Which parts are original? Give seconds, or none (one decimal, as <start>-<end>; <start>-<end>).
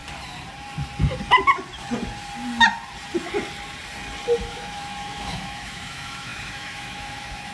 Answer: 0.0-4.4